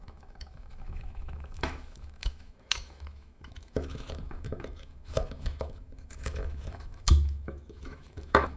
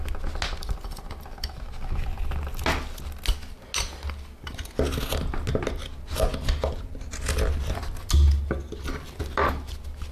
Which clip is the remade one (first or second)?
first